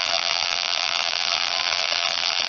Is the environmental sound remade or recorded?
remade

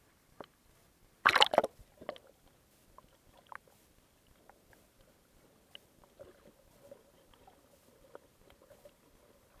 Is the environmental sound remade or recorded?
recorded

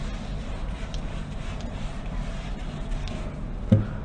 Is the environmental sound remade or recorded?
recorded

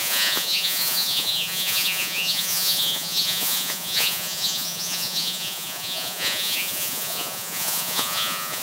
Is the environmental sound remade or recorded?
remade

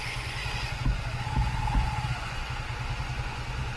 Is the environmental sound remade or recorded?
remade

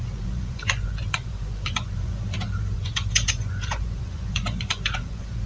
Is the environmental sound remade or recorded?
remade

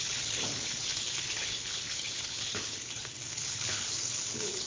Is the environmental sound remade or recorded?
remade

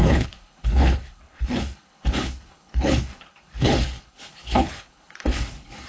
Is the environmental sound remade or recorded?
remade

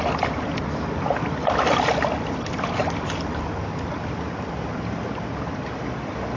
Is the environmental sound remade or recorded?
recorded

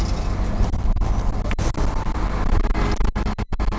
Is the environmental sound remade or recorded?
recorded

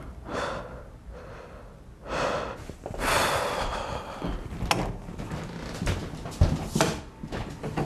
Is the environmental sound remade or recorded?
recorded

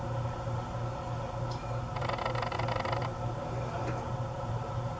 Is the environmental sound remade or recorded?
remade